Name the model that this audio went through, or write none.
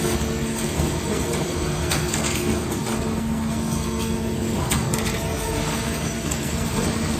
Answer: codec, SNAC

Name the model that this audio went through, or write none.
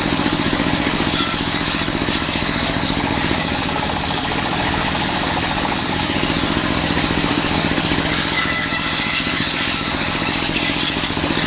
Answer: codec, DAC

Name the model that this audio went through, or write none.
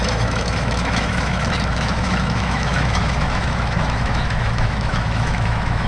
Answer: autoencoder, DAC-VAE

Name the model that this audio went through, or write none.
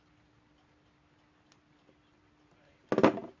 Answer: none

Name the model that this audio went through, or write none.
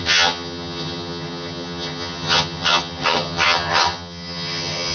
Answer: vocoder, HiFi-GAN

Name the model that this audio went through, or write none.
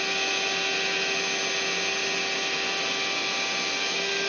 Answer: none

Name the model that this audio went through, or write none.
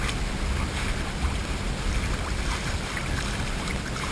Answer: none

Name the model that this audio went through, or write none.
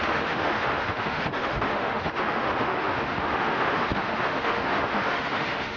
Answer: autoencoder, DAC-VAE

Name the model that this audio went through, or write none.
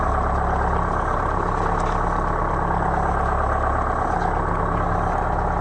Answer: none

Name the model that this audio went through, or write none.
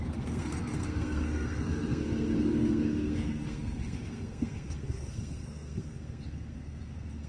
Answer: codec, SNAC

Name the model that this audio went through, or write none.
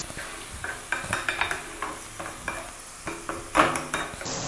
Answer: none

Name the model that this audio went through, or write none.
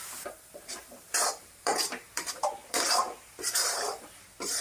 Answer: vocoder, BigVGAN v2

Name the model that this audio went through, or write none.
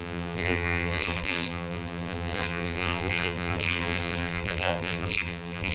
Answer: vocoder, BigVGAN v2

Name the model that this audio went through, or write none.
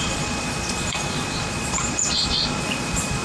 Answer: vocoder, Vocos